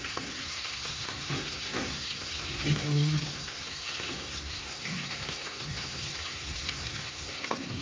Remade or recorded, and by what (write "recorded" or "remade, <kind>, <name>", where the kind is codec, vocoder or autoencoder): remade, codec, SNAC